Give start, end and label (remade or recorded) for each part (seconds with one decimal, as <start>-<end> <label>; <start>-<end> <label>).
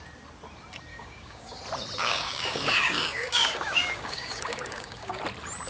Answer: 0.0-0.9 recorded; 0.9-1.6 remade; 1.6-2.0 recorded; 2.0-5.2 remade; 5.2-5.7 recorded